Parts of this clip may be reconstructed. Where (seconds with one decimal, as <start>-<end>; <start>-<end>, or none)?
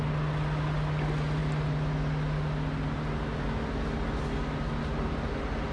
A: none